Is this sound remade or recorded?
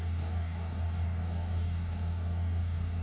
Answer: remade